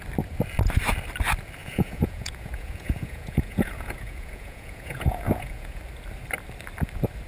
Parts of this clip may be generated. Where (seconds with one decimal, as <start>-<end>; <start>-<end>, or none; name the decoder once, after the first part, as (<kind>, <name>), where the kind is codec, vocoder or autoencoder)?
1.6-5.8 (vocoder, Vocos)